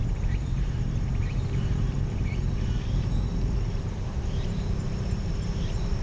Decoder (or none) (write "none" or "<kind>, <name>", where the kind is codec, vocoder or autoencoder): vocoder, BigVGAN v2